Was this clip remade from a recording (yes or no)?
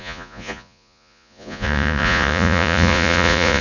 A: yes